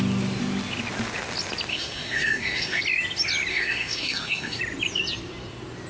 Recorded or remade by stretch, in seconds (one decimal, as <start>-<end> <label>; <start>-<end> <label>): 0.0-1.7 recorded; 1.7-2.8 remade; 2.8-3.5 recorded; 3.5-4.6 remade; 4.6-5.9 recorded